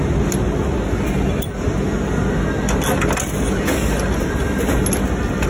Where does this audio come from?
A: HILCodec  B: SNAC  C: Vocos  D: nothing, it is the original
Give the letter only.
D